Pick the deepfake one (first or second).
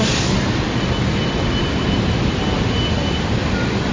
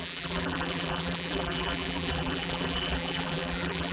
second